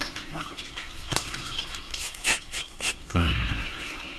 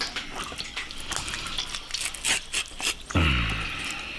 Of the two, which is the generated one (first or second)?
first